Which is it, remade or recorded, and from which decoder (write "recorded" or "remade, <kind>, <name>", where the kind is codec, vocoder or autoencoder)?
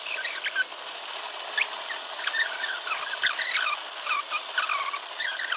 recorded